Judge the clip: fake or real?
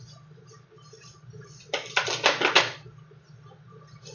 real